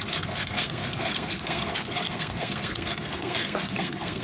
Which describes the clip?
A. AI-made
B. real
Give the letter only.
A